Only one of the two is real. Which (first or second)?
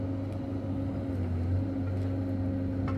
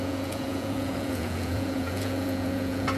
first